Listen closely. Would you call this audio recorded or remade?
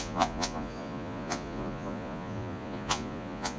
remade